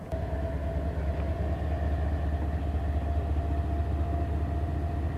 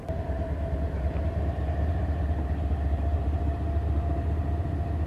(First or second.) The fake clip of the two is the second